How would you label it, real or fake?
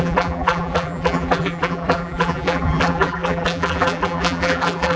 fake